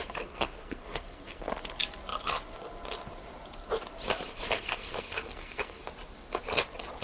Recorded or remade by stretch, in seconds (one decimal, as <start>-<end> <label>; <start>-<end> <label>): 0.0-1.5 remade; 1.5-4.3 recorded; 4.3-5.8 remade; 5.8-7.0 recorded

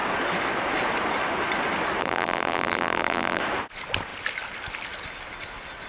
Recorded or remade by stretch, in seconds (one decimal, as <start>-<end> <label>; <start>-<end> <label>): 0.0-2.0 recorded; 2.0-3.4 remade; 3.4-5.9 recorded

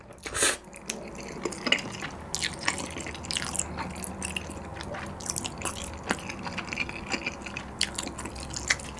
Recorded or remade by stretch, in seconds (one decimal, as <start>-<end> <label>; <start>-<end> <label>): 0.0-9.0 recorded

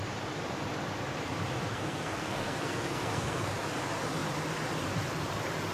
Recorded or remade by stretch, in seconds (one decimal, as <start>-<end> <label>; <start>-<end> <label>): 0.0-1.7 recorded; 1.7-3.5 remade; 3.5-5.7 recorded

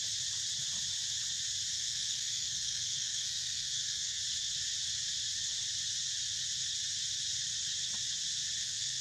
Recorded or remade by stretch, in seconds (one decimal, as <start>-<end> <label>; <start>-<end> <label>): 0.0-1.7 recorded; 1.7-4.2 remade; 4.2-8.6 recorded; 8.6-9.0 remade

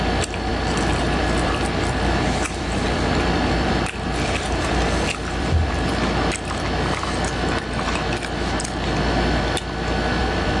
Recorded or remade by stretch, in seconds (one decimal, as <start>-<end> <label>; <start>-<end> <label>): 0.0-5.9 remade; 5.9-10.2 recorded; 10.2-10.6 remade